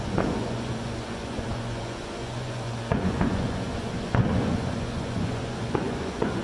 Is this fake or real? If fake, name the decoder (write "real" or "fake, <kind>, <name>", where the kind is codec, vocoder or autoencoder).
fake, vocoder, Vocos